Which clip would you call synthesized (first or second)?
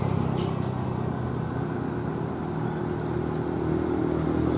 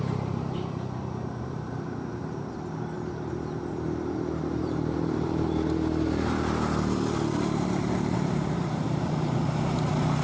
second